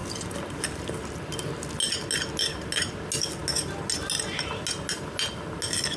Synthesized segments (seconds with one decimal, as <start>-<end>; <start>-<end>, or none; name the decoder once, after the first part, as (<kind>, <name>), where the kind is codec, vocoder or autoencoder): none